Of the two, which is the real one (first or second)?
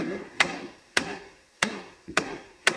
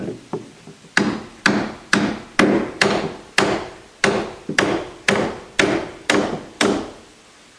second